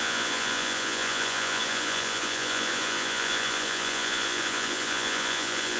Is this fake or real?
fake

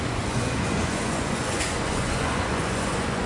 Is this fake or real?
fake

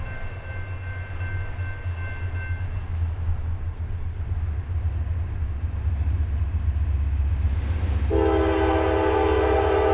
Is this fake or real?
real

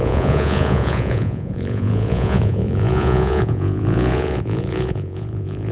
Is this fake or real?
fake